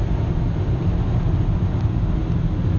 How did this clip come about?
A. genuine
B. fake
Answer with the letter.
A